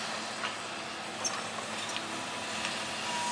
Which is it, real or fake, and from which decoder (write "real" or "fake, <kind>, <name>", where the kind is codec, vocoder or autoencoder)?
real